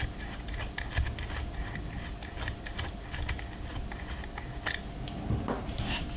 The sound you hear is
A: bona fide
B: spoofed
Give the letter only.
A